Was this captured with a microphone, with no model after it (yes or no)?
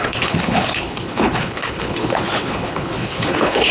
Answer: no